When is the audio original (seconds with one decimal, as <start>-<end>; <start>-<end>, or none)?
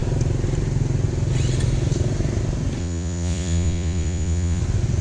0.0-2.8; 4.6-5.0